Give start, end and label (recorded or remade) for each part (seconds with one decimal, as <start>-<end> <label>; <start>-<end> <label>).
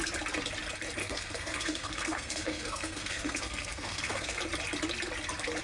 0.0-1.0 recorded; 1.0-4.4 remade; 4.4-5.6 recorded